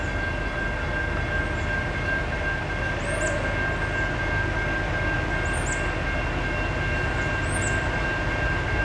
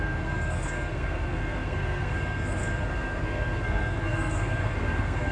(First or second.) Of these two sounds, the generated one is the second